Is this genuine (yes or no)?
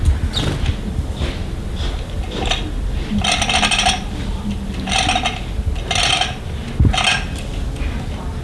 yes